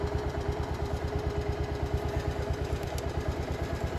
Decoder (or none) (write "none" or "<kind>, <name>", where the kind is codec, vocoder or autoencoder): vocoder, BigVGAN v2